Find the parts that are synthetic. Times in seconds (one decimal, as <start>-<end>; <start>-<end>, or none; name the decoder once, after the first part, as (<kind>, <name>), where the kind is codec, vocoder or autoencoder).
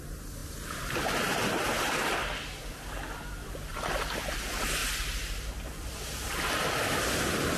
none